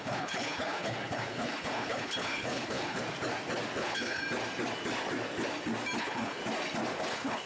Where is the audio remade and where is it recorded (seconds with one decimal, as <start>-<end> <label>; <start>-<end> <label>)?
0.0-3.0 remade; 3.0-3.8 recorded; 3.8-4.2 remade; 4.2-6.0 recorded; 6.0-6.4 remade; 6.4-7.0 recorded; 7.0-7.5 remade